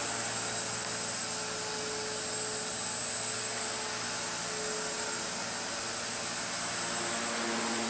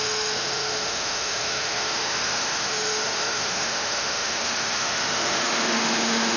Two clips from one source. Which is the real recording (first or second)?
first